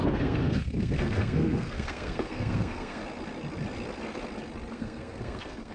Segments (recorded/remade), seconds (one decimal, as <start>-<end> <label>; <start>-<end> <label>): 0.0-3.0 remade; 3.0-4.7 recorded; 4.7-5.7 remade